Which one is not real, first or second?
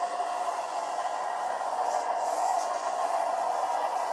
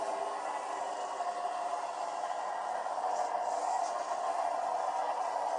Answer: first